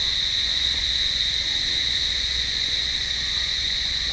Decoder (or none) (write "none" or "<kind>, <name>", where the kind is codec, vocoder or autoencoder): vocoder, Vocos